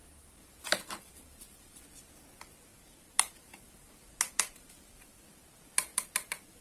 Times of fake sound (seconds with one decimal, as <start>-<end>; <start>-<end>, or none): 0.0-1.8; 2.7-5.0; 5.9-6.6